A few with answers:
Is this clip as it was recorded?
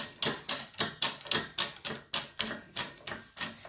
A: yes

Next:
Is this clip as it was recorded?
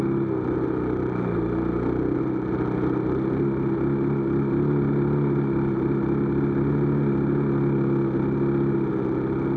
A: yes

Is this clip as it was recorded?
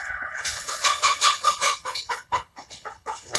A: no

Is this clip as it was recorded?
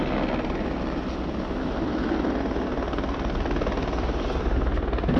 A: yes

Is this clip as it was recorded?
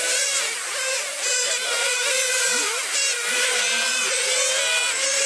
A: no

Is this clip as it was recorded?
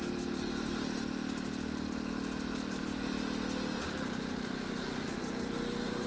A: yes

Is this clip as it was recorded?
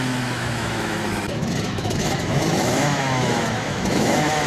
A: no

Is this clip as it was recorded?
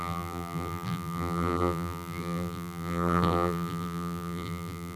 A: no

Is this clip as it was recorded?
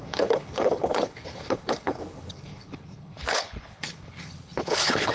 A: no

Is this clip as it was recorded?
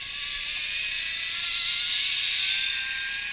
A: yes